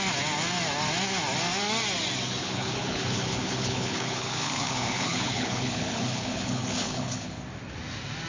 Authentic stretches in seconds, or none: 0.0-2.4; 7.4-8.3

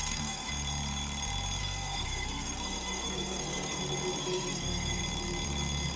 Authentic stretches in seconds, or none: 0.5-1.6; 3.8-4.2; 5.0-6.0

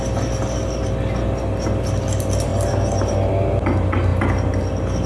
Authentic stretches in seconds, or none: 0.0-5.1

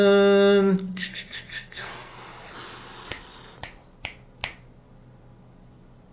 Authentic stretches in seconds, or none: 0.0-0.9; 2.1-6.1

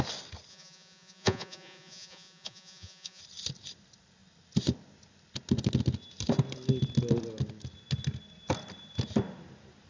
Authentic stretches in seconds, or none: 0.0-0.5; 3.2-9.9